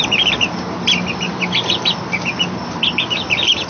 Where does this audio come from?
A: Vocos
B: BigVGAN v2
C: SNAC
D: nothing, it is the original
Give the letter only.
B